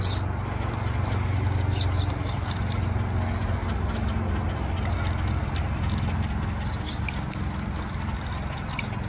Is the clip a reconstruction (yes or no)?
no